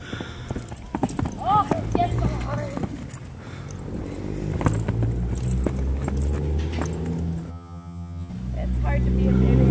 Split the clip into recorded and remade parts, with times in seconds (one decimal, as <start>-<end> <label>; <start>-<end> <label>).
0.0-7.5 recorded; 7.5-8.3 remade; 8.3-9.7 recorded